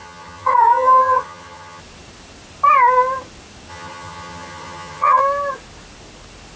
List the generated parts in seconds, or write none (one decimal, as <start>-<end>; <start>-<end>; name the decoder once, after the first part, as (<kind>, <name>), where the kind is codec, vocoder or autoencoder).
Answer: 0.0-1.8 (vocoder, HiFi-GAN); 3.7-5.2